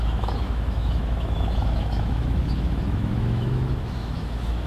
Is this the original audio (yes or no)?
no